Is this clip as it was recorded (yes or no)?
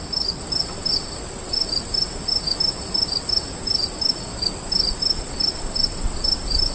yes